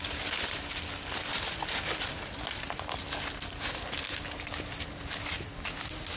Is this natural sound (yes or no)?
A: yes